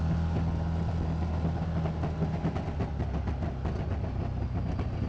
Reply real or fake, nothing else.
real